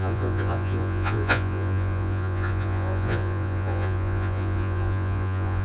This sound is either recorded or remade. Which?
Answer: remade